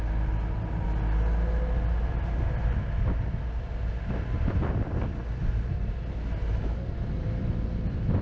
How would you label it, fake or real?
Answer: real